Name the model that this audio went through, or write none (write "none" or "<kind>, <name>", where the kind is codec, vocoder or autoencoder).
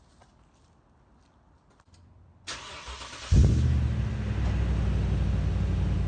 none